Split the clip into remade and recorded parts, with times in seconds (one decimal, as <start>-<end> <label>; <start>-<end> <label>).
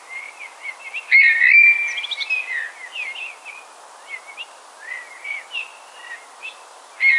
0.0-7.2 recorded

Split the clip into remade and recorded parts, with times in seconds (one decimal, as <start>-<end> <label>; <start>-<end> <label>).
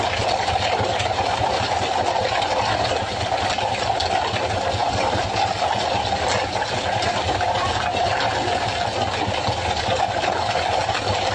0.0-11.3 recorded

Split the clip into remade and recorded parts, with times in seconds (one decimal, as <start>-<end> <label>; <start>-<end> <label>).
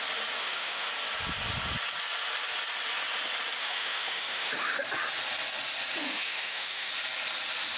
0.0-0.4 recorded; 0.4-0.9 remade; 0.9-3.6 recorded; 3.6-4.8 remade; 4.8-6.0 recorded; 6.0-6.9 remade; 6.9-7.8 recorded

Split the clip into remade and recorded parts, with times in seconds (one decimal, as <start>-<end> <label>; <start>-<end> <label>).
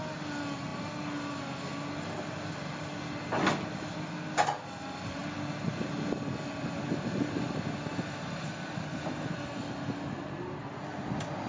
0.0-11.5 recorded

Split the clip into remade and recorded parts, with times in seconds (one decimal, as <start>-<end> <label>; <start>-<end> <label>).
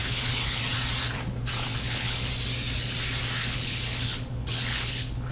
0.0-0.6 remade; 0.6-1.7 recorded; 1.7-2.3 remade; 2.3-3.4 recorded; 3.4-5.3 remade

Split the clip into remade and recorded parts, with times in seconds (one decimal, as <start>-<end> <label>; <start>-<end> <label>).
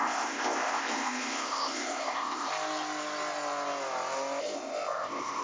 0.0-2.5 remade; 2.5-4.4 recorded; 4.4-5.4 remade